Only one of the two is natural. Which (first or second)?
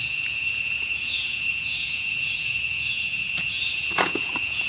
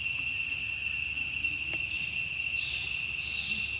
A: second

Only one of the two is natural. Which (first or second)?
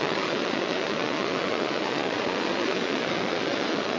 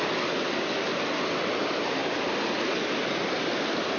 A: second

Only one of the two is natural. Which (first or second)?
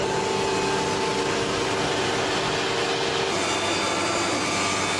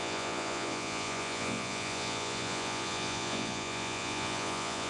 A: first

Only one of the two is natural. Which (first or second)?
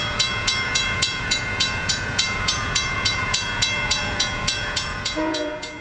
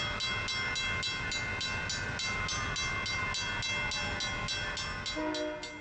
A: second